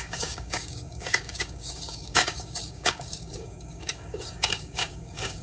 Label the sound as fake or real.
fake